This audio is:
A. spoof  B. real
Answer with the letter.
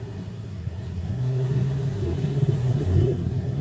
A